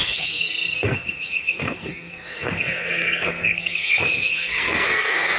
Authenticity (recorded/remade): remade